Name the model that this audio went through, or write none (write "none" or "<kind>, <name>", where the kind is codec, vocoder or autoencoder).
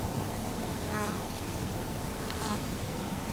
codec, SNAC